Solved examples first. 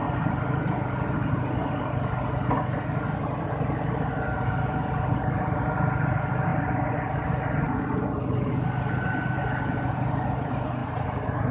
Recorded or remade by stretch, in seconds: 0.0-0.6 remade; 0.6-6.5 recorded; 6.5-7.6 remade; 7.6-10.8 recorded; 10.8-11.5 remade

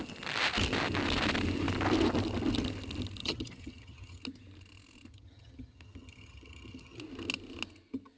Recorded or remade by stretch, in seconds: 0.0-3.2 recorded; 3.2-4.2 remade; 4.2-5.1 recorded; 5.1-7.0 remade; 7.0-8.2 recorded

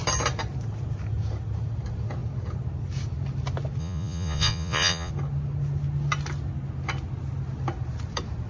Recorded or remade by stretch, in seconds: 0.0-3.8 recorded; 3.8-5.1 remade; 5.1-8.5 recorded

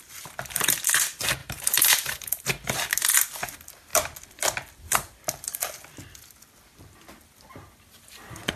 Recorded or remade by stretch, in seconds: 0.0-1.4 recorded; 1.4-2.3 remade; 2.3-8.6 recorded

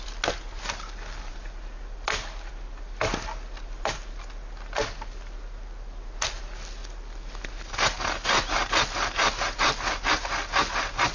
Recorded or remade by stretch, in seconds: 0.0-11.1 recorded

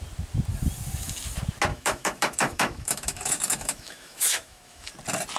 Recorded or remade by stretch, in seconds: 0.0-1.7 recorded; 1.7-4.9 remade; 4.9-5.4 recorded